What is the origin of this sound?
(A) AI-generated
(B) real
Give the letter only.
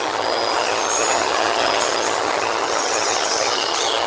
A